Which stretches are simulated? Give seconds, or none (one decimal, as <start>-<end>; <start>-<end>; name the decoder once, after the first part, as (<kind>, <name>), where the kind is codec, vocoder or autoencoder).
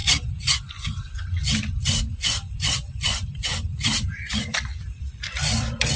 2.1-6.0 (vocoder, BigVGAN v2)